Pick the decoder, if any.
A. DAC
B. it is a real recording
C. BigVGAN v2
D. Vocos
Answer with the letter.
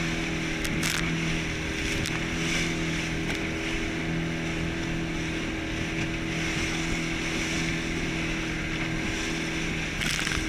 B